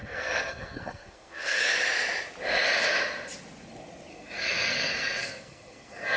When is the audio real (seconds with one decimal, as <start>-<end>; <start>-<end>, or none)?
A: 1.6-4.1